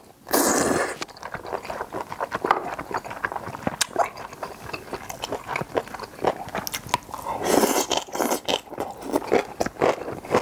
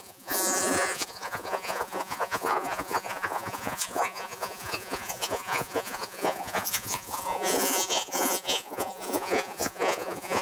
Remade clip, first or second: second